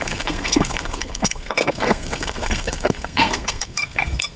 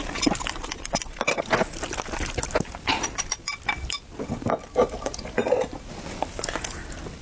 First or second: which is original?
second